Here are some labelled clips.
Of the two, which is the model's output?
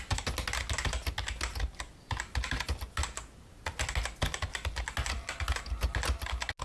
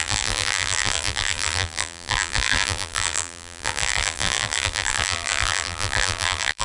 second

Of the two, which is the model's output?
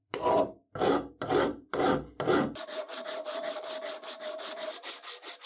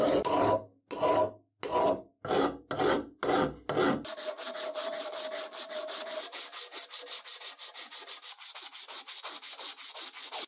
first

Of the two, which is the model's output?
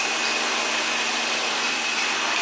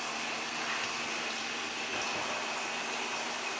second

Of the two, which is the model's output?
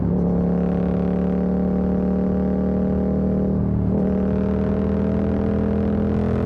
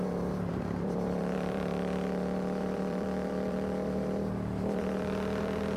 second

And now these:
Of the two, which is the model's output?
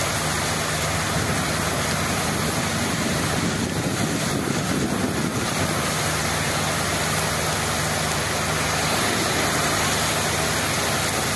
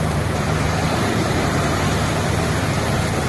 second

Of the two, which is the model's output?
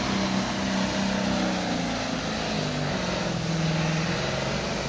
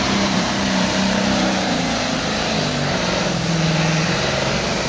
second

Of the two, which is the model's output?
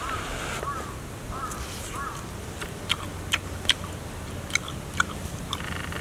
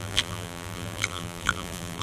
second